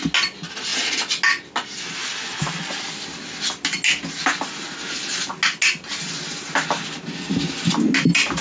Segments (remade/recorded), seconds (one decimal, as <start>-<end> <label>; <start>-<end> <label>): 0.0-8.4 recorded